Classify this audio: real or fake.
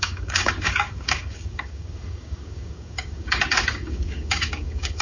fake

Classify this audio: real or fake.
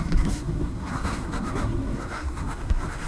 fake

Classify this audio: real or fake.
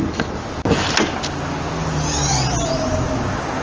real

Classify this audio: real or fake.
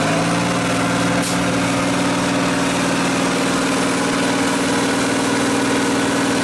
real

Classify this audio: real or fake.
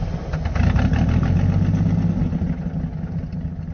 real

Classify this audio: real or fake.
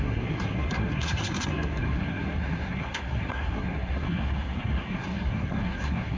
fake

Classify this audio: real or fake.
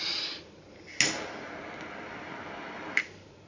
real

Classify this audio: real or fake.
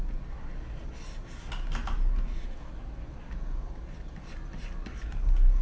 real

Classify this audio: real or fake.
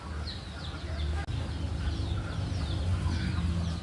real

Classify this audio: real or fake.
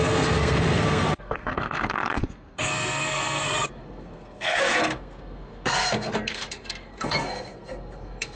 fake